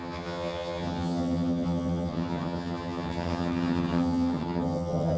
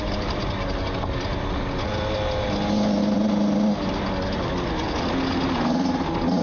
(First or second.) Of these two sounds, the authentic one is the second